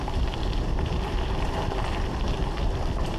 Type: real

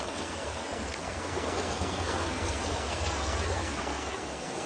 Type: fake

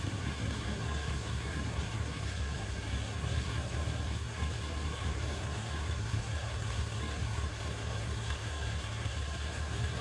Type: fake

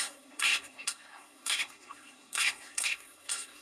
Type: fake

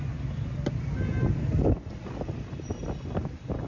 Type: real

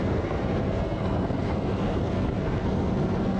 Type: fake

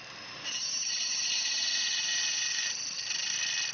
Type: real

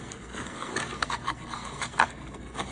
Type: fake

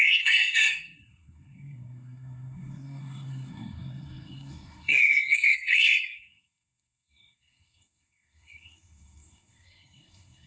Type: fake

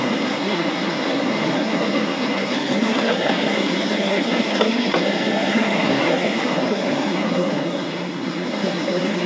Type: fake